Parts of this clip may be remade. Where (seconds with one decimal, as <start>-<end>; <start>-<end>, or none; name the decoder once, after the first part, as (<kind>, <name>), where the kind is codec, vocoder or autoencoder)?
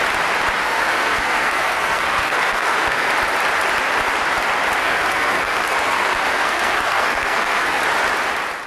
0.6-3.1 (codec, SNAC); 4.8-7.8